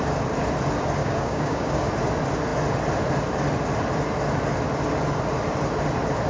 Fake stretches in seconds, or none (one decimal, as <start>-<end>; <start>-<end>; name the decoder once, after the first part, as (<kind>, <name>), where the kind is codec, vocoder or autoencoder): 1.0-1.9 (codec, DAC)